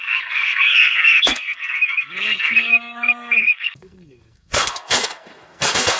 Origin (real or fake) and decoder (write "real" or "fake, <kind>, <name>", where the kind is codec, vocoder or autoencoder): fake, codec, SNAC